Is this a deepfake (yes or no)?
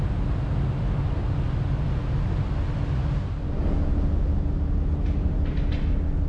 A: no